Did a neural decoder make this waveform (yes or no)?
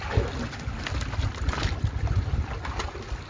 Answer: no